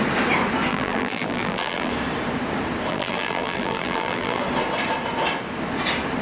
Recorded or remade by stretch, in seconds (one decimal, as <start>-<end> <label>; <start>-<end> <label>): 0.0-0.7 recorded; 0.7-1.9 remade; 1.9-2.9 recorded; 2.9-4.4 remade; 4.4-6.2 recorded